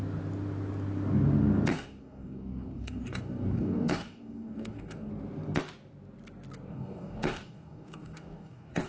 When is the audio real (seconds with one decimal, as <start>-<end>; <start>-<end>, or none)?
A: 0.0-1.7; 5.1-6.7